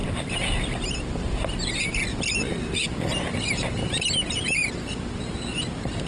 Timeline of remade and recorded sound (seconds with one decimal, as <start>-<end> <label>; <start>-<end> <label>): 0.0-6.1 recorded